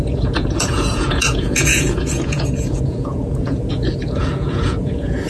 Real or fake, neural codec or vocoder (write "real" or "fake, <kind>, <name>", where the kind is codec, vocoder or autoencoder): fake, vocoder, Vocos